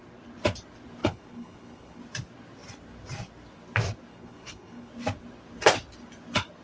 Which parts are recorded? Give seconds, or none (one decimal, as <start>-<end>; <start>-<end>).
0.0-1.0; 2.0-4.1; 4.9-6.6